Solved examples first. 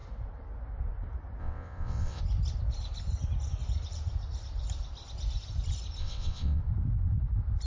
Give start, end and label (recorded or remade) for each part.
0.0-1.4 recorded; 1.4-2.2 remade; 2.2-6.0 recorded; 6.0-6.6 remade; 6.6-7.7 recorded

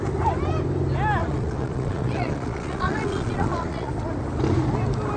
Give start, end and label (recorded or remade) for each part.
0.0-1.2 recorded; 1.2-3.9 remade; 3.9-5.2 recorded

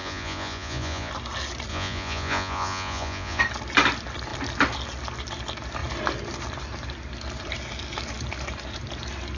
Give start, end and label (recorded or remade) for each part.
0.0-1.1 remade; 1.1-1.7 recorded; 1.7-3.4 remade; 3.4-9.4 recorded

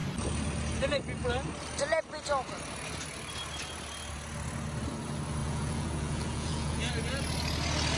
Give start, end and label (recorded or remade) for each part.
0.0-5.4 recorded; 5.4-6.9 remade; 6.9-8.0 recorded

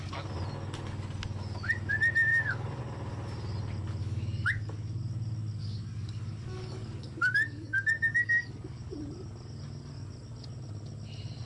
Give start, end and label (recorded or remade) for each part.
0.0-2.3 recorded; 2.3-2.8 remade; 2.8-4.0 recorded; 4.0-5.0 remade; 5.0-5.6 recorded; 5.6-9.0 remade; 9.0-11.5 recorded

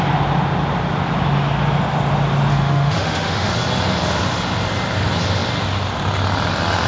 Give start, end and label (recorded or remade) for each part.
0.0-2.5 recorded; 2.5-3.5 remade; 3.5-6.9 recorded

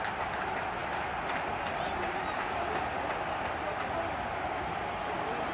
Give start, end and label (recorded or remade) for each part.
0.0-5.5 recorded